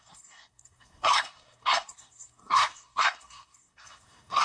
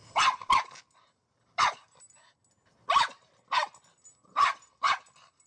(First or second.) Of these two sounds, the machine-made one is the first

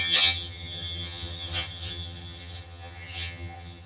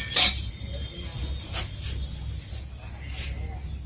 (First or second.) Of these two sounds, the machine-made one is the first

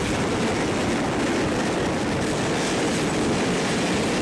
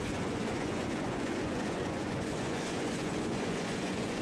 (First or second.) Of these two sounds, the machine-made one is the second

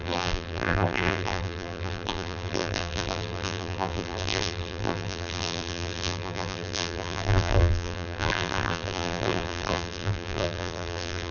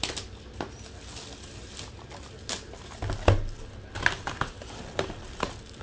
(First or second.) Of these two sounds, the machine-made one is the first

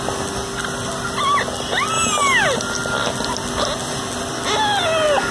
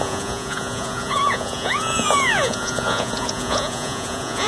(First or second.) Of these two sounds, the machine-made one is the second